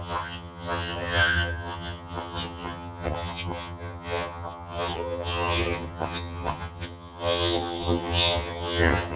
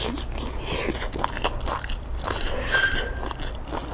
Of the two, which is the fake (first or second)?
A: first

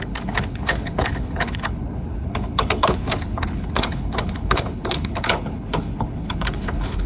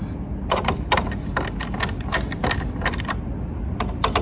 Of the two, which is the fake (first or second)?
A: first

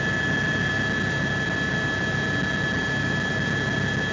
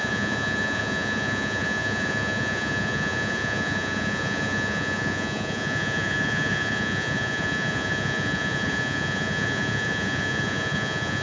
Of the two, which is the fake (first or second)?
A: second